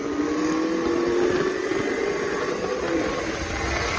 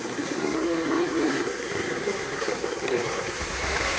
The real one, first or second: first